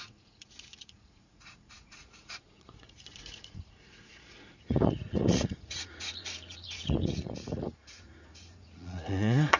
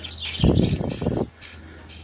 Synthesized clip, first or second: first